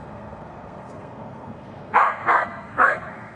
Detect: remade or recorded remade